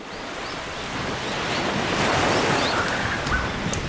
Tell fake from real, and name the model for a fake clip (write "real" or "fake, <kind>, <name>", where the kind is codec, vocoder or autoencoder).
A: real